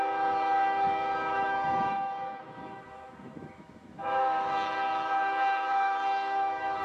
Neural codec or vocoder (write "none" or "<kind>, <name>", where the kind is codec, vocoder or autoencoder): autoencoder, DAC-VAE